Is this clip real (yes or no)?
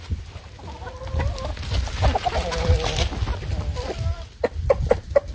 yes